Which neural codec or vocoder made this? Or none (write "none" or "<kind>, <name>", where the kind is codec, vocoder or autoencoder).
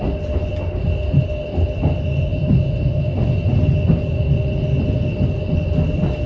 none